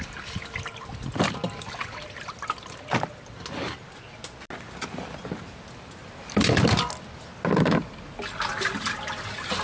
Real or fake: real